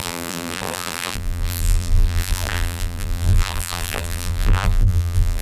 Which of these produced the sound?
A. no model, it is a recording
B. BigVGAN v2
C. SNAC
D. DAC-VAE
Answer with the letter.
B